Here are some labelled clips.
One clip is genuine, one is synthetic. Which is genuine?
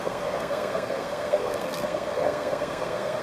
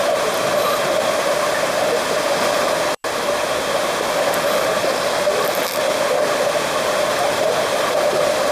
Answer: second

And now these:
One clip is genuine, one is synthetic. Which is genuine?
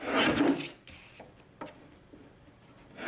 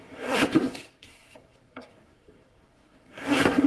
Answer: first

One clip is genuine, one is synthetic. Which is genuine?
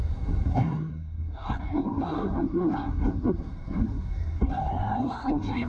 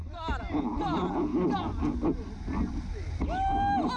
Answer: second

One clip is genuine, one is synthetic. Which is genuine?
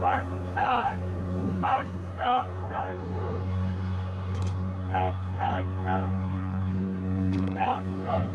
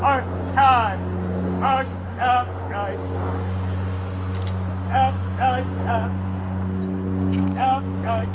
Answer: second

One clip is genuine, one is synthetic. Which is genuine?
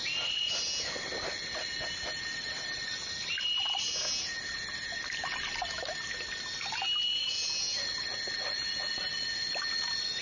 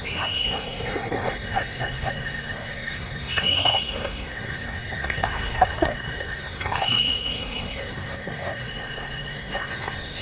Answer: first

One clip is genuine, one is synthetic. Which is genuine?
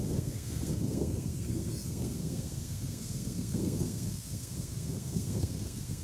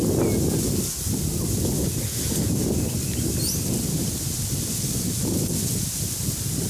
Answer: second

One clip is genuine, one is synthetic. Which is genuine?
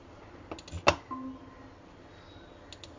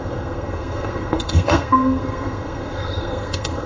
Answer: first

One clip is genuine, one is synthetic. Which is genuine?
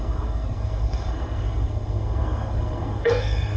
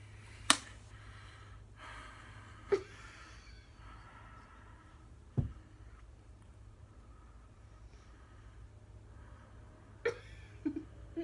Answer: second